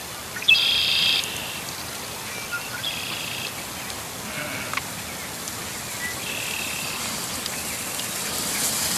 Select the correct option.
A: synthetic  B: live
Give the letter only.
B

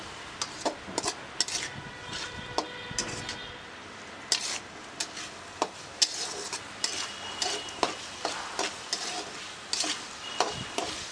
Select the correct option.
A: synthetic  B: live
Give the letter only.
B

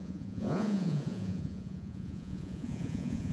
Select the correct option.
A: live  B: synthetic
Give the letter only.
B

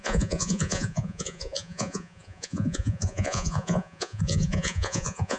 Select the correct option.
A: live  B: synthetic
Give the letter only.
B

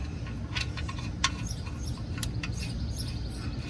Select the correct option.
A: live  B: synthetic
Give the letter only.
A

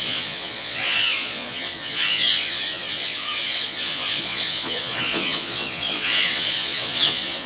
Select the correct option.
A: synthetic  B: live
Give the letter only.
A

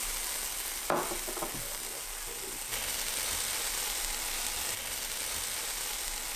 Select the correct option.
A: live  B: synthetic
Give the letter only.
A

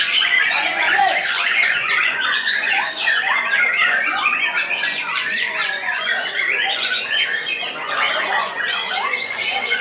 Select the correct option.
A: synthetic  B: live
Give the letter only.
A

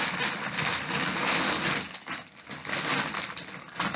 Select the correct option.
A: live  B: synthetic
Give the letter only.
A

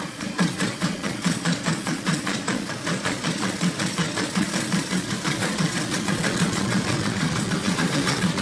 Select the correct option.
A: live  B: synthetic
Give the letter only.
B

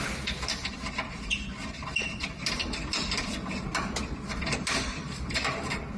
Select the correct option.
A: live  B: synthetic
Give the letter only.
A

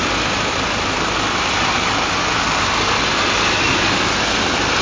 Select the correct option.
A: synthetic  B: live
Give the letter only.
B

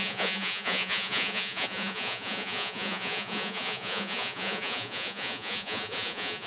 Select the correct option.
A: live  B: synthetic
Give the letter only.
B